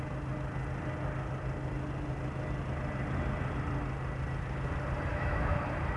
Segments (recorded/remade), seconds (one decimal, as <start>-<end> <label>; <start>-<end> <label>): 0.0-5.1 recorded; 5.1-5.6 remade; 5.6-6.0 recorded